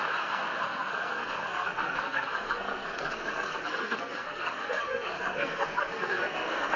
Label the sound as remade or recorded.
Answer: remade